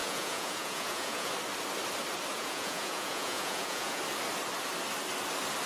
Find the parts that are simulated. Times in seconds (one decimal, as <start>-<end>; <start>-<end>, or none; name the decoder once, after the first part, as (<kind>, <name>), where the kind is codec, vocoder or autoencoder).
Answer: 0.0-1.3 (vocoder, Vocos); 2.3-4.0

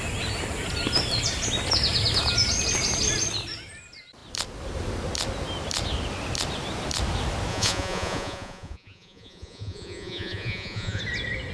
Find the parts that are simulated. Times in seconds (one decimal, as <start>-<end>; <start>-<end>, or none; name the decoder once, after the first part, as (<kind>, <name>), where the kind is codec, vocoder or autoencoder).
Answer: 7.5-11.0 (vocoder, Vocos)

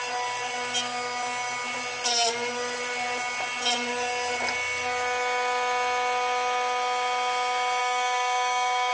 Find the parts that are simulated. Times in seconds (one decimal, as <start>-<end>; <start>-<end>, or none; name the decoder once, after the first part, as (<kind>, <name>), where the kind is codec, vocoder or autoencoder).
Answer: 7.8-8.9 (codec, DAC)

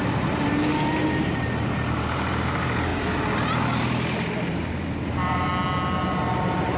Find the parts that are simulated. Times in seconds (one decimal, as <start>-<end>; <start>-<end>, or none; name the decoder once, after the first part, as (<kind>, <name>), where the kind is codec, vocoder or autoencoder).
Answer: 0.0-2.9 (vocoder, BigVGAN v2); 4.5-5.5; 6.1-6.8

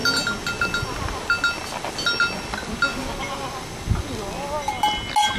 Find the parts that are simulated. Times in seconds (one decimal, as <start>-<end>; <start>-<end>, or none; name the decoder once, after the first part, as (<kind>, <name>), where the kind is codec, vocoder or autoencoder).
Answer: none